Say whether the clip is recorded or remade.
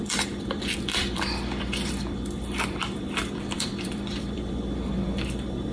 remade